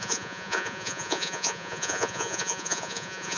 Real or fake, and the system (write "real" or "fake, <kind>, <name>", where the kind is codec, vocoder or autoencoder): fake, vocoder, Vocos